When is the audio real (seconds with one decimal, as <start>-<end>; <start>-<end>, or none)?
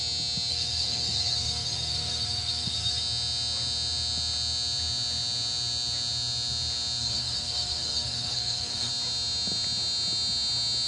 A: 0.0-0.5; 3.0-7.0; 8.9-10.9